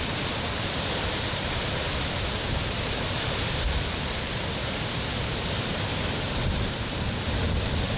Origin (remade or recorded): remade